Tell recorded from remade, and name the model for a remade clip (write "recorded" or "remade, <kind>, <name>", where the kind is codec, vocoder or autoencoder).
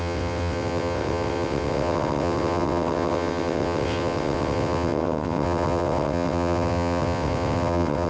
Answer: remade, vocoder, WaveNeXt